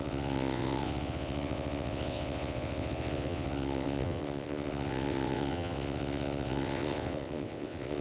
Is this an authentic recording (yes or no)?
no